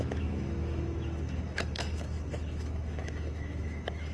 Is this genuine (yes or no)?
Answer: no